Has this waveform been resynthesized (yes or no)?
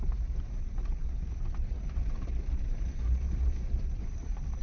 yes